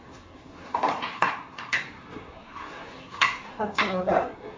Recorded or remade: remade